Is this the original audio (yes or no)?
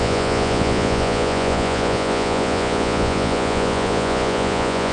no